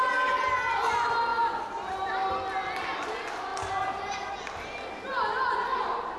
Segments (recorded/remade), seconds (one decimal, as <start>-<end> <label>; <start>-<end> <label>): 0.0-1.3 recorded; 1.3-2.3 remade; 2.3-6.2 recorded